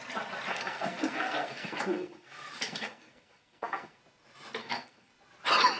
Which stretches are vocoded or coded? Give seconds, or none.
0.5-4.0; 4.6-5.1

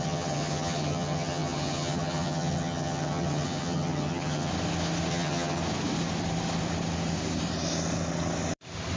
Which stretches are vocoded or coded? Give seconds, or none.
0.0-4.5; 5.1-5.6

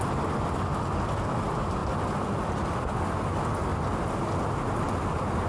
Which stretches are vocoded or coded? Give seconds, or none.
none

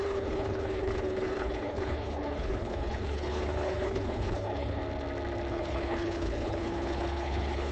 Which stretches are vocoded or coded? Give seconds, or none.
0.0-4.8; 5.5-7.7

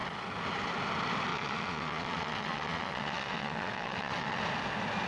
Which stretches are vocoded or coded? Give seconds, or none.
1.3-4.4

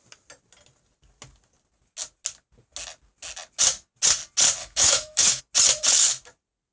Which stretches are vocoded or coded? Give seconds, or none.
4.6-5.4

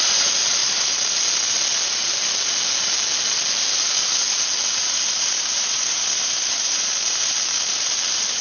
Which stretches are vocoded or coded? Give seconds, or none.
0.0-0.6; 4.7-8.4

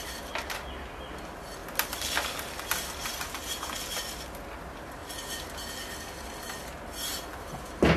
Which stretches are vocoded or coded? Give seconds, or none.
none